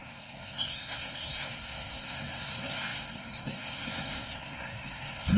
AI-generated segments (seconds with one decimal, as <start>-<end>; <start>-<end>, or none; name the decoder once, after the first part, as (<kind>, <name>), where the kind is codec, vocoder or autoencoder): 0.0-5.4 (codec, SNAC)